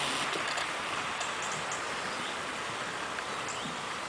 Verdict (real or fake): real